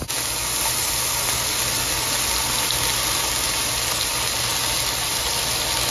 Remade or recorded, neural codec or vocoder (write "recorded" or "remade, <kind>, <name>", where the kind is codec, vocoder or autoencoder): recorded